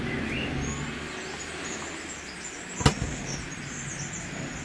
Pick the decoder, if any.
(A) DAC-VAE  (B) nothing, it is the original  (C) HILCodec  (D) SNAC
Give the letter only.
B